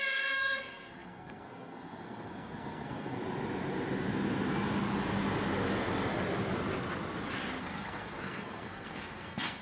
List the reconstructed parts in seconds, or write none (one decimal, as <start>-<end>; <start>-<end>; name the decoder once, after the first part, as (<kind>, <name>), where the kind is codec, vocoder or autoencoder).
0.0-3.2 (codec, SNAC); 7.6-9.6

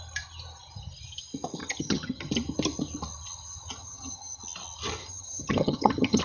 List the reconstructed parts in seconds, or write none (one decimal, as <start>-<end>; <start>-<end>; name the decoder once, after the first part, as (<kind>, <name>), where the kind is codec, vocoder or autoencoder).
1.6-2.3 (vocoder, HiFi-GAN); 3.8-4.4; 5.0-6.2

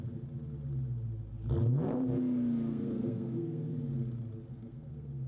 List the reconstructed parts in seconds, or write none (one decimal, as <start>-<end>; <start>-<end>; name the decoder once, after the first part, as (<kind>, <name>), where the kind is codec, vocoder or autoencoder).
2.7-3.7 (codec, SNAC); 4.5-5.3

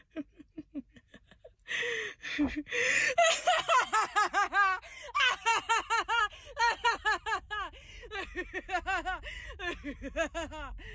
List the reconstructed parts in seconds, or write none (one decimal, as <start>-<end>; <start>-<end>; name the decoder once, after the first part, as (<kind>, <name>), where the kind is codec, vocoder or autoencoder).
none